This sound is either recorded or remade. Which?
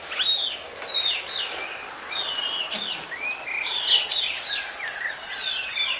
recorded